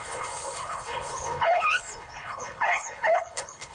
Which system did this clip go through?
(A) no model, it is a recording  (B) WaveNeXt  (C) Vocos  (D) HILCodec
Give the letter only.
D